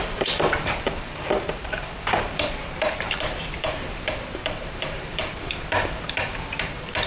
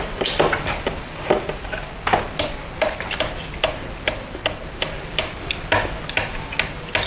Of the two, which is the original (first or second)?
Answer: second